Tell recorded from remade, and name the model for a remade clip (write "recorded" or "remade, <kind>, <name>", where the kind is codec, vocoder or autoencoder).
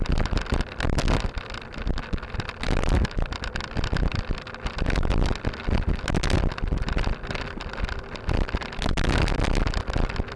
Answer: recorded